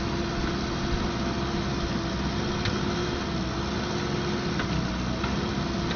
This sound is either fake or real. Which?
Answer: real